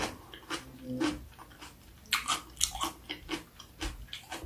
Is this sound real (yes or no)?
yes